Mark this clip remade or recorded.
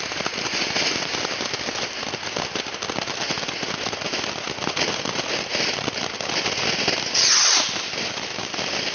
recorded